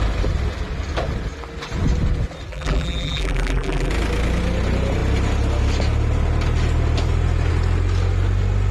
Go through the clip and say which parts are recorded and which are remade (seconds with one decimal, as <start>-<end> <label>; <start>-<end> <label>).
0.0-2.5 recorded; 2.5-3.9 remade; 3.9-8.7 recorded